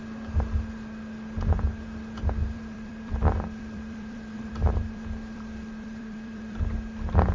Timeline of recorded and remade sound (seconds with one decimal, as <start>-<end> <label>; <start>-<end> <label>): 0.0-2.4 recorded; 2.4-6.6 remade; 6.6-7.3 recorded